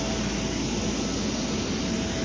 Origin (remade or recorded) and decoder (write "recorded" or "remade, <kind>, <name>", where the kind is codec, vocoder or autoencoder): recorded